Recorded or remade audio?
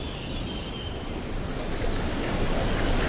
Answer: recorded